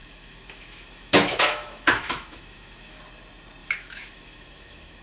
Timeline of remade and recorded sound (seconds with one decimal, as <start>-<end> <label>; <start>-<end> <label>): 0.0-3.0 remade; 3.0-3.6 recorded; 3.6-5.0 remade